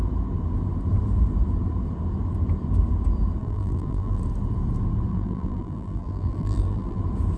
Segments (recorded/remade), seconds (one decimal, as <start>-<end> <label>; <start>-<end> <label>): 0.0-3.4 recorded; 3.4-4.2 remade; 4.2-5.1 recorded; 5.1-7.0 remade; 7.0-7.4 recorded